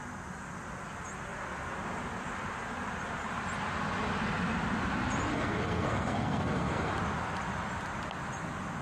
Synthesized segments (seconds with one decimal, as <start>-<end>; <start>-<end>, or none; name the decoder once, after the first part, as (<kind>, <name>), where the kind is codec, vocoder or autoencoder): 5.3-6.9 (codec, SNAC)